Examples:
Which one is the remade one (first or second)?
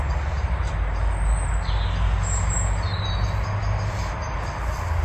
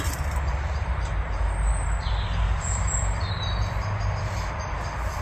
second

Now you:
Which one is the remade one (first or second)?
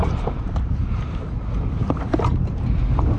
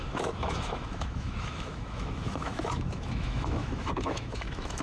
second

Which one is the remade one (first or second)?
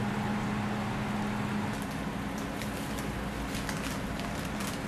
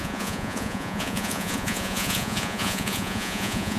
second